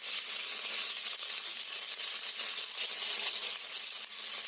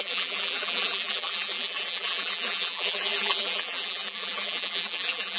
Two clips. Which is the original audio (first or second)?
first